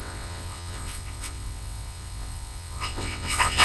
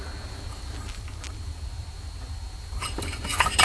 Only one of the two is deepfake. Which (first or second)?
first